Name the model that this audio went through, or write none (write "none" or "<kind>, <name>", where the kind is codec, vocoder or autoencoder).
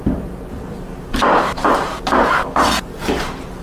vocoder, BigVGAN v2